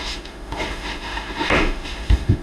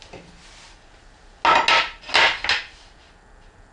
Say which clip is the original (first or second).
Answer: second